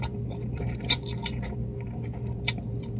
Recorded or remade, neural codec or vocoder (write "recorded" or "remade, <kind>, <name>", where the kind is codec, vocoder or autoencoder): remade, vocoder, BigVGAN v2